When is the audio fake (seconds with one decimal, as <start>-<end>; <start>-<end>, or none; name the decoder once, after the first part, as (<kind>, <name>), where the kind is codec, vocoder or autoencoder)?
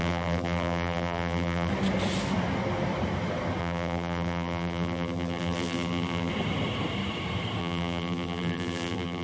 0.0-1.7 (vocoder, BigVGAN v2); 3.6-6.3; 7.6-9.2